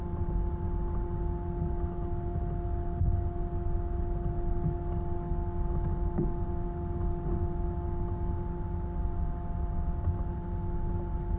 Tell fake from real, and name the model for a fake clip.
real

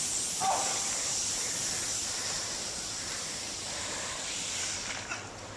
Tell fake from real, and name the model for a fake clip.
fake, vocoder, BigVGAN v2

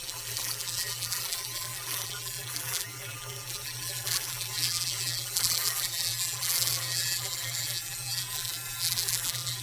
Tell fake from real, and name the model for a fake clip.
fake, vocoder, BigVGAN v2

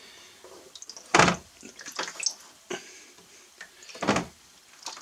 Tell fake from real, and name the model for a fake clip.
real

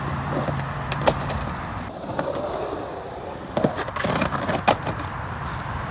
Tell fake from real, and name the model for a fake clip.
fake, vocoder, BigVGAN v2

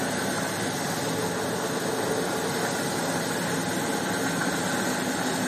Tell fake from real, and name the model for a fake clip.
real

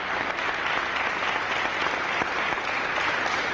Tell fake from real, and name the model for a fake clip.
real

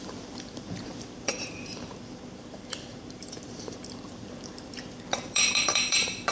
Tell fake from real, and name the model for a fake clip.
fake, vocoder, BigVGAN v2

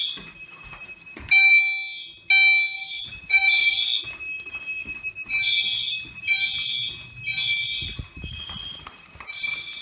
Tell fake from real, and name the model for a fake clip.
real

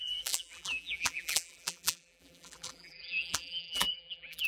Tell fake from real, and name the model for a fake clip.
fake, vocoder, BigVGAN v2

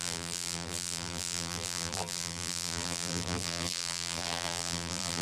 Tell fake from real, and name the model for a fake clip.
fake, vocoder, BigVGAN v2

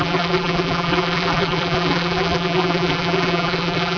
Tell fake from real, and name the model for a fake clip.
fake, vocoder, BigVGAN v2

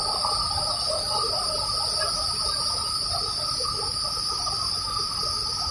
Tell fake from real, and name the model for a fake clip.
real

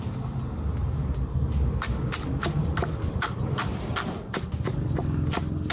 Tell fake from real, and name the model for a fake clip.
real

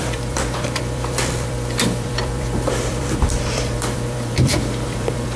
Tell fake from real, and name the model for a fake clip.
fake, vocoder, BigVGAN v2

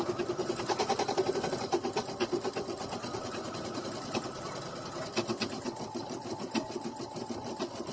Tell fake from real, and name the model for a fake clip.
fake, vocoder, BigVGAN v2